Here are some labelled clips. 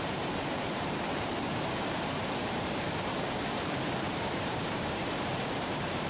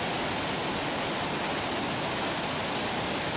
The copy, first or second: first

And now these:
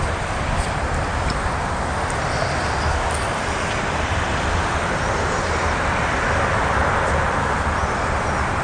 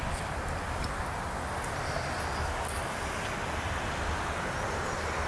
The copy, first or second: first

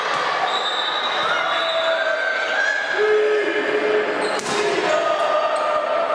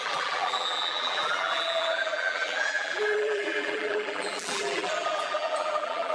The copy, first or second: second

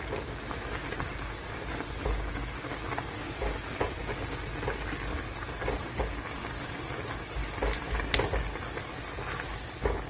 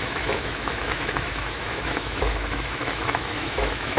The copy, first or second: second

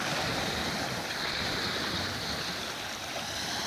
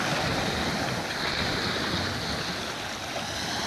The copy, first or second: first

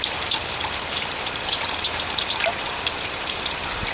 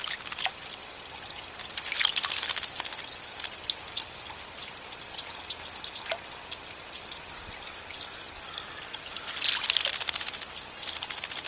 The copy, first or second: first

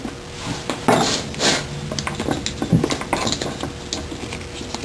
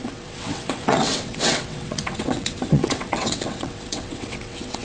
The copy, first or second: second